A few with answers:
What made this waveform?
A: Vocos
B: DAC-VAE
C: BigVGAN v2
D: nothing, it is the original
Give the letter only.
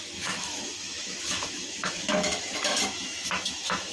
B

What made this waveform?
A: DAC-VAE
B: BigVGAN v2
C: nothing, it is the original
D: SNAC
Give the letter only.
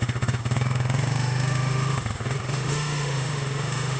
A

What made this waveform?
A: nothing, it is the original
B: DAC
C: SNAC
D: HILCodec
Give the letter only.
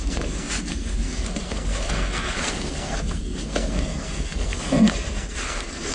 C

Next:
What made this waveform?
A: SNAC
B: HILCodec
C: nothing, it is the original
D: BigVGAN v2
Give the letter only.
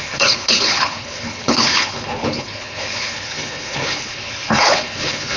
B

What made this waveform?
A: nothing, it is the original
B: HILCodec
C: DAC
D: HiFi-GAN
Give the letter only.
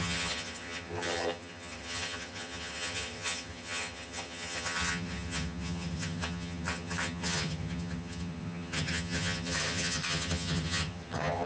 D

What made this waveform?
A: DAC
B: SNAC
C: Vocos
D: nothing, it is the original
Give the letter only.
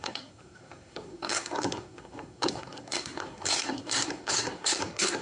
B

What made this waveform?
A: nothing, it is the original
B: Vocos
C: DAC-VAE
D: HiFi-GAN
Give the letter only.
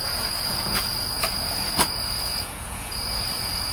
B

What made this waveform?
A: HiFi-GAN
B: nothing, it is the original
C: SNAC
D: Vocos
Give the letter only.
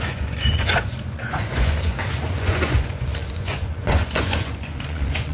D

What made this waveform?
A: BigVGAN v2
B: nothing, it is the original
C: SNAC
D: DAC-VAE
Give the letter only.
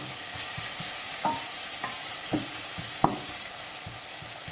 B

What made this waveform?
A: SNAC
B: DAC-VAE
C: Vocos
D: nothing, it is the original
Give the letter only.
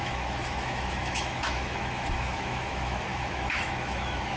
B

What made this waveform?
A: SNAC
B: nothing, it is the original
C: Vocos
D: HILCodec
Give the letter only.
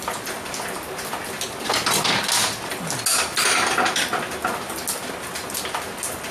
B